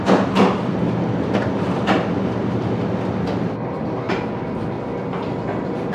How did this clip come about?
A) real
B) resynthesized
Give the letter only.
A